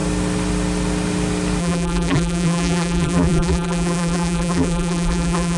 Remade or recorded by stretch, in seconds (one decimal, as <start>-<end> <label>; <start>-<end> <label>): 0.0-1.6 recorded; 1.6-5.6 remade